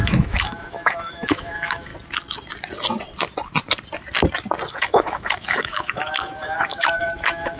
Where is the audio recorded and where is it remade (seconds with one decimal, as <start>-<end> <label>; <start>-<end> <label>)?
0.0-1.9 remade; 1.9-4.7 recorded; 4.7-7.6 remade